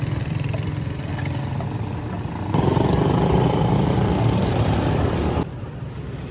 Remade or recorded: remade